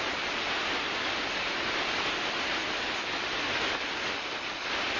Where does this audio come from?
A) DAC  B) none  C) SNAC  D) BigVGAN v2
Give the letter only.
B